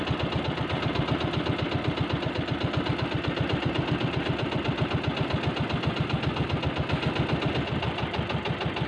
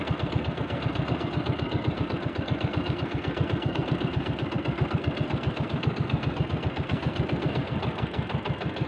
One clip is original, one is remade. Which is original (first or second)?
first